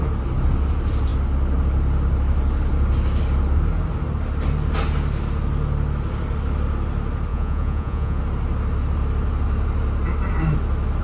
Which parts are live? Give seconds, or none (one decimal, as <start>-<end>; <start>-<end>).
0.0-7.3; 8.2-11.0